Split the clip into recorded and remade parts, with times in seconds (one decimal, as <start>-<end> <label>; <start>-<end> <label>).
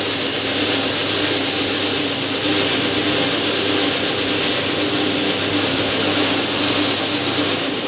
0.0-7.9 recorded